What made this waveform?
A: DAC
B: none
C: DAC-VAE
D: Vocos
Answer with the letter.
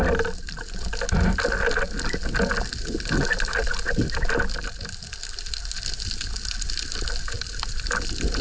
B